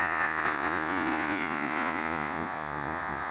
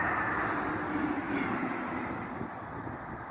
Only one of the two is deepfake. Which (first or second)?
first